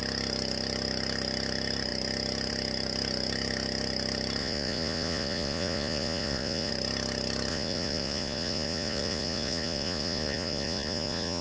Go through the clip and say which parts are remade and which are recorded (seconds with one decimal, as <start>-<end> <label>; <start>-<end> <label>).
0.0-4.4 recorded; 4.4-6.7 remade; 6.7-7.5 recorded; 7.5-11.4 remade